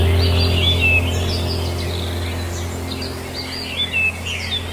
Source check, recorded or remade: recorded